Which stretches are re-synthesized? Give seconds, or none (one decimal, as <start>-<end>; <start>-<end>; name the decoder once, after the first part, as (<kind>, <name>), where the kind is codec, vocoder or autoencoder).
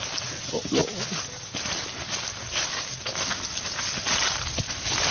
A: none